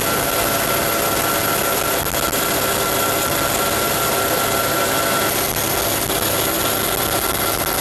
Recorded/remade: recorded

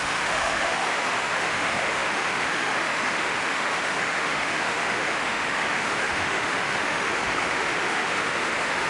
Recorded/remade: remade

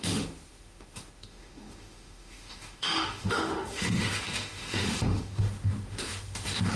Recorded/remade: remade